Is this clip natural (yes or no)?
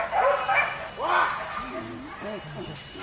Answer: yes